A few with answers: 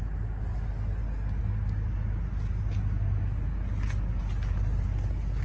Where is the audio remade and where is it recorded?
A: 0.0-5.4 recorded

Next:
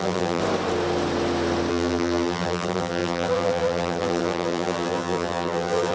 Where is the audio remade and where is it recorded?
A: 0.0-0.4 remade; 0.4-1.7 recorded; 1.7-5.9 remade

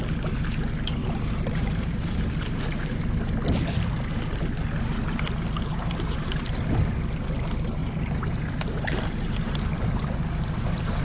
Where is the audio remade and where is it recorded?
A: 0.0-1.0 recorded; 1.0-3.0 remade; 3.0-5.7 recorded; 5.7-6.4 remade; 6.4-7.8 recorded; 7.8-11.0 remade

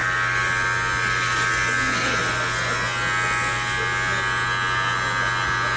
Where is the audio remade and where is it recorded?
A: 0.0-5.8 recorded

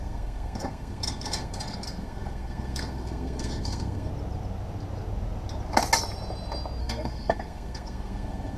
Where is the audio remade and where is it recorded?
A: 0.0-4.1 remade; 4.1-6.8 recorded; 6.8-8.6 remade

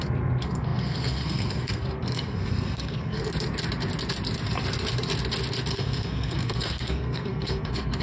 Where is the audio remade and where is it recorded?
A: 0.0-3.2 remade; 3.2-5.7 recorded; 5.7-8.0 remade

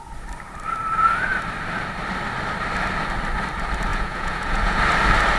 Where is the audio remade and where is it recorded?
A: 0.0-3.9 recorded; 3.9-4.8 remade; 4.8-5.4 recorded